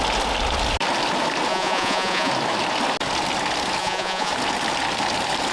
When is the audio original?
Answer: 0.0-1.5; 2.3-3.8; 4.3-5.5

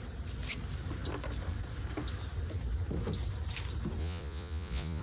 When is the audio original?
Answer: 0.0-4.0